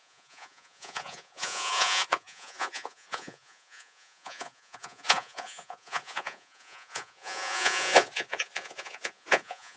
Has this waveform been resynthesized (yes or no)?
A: yes